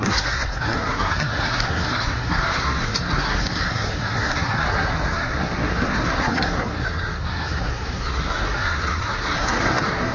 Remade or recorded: remade